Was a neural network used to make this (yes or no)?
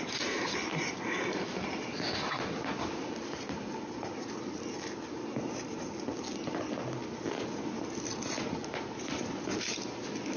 no